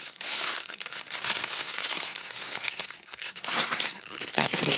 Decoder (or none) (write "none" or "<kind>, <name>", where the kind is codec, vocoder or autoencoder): codec, SNAC